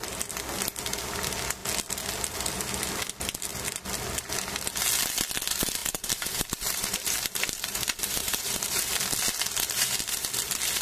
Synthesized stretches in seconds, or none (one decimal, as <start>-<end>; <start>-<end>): 5.8-8.9